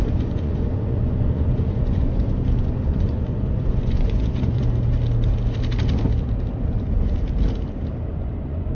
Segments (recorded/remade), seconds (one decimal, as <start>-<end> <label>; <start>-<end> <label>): 0.0-4.6 remade; 4.6-8.1 recorded; 8.1-8.7 remade